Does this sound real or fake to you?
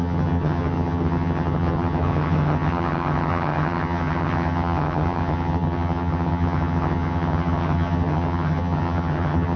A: fake